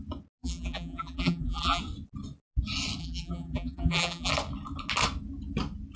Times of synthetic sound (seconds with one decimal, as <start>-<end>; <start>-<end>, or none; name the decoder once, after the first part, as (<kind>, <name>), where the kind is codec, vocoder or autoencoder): 0.4-1.8 (vocoder, BigVGAN v2); 3.0-4.3